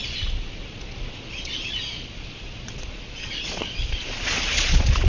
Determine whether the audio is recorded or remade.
remade